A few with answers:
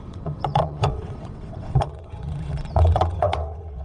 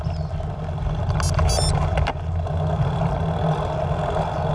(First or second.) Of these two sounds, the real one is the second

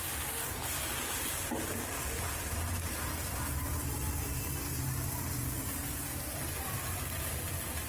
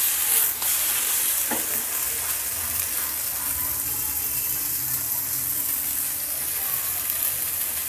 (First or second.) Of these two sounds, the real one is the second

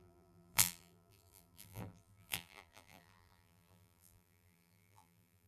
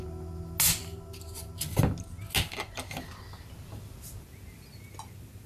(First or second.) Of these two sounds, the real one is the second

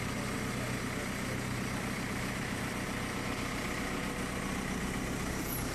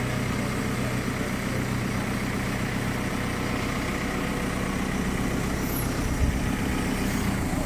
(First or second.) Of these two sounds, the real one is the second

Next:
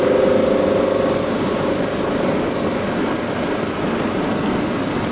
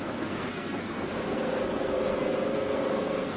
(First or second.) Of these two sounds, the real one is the first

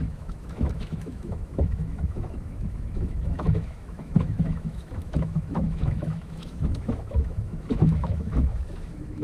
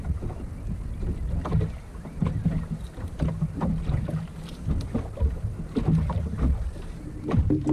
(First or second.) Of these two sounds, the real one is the second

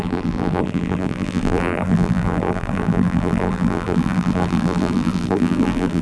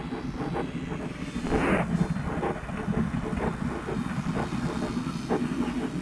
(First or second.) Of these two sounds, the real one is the second